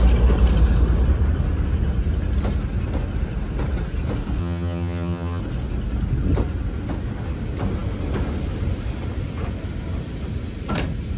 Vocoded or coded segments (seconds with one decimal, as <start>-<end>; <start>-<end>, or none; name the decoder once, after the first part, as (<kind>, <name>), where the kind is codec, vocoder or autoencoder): 4.4-5.4 (vocoder, HiFi-GAN)